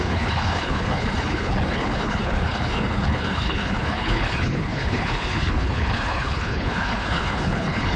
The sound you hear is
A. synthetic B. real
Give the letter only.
A